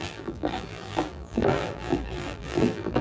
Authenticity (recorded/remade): remade